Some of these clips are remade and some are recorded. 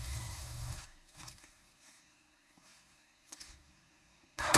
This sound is remade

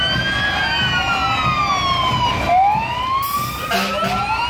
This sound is recorded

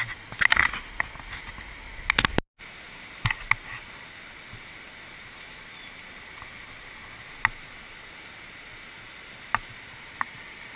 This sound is recorded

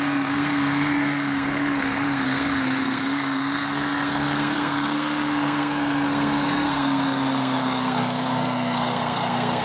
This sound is remade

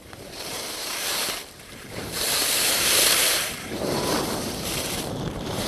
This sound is remade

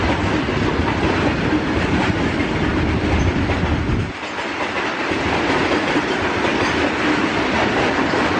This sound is recorded